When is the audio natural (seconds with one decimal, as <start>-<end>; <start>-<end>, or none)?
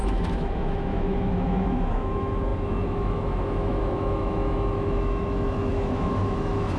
none